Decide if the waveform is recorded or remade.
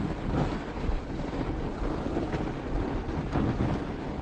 recorded